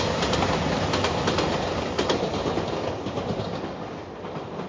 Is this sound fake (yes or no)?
no